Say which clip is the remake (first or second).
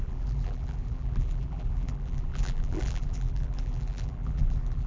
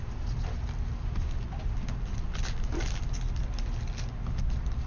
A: first